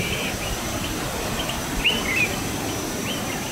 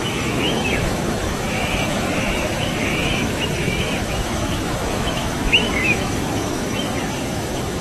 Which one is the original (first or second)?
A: first